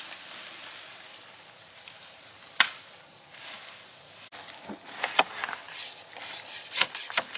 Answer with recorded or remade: recorded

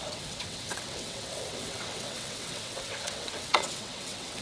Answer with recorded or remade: remade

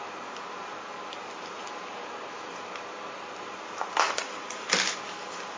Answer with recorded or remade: recorded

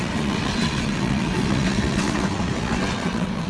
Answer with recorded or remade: remade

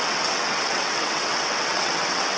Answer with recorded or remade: remade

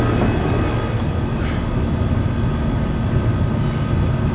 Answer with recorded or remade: recorded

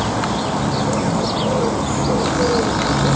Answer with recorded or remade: recorded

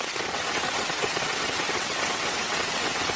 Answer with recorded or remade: remade